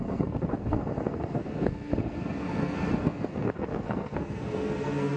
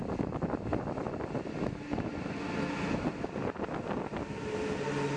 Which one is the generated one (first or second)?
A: first